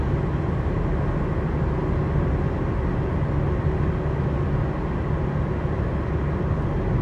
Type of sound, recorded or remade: recorded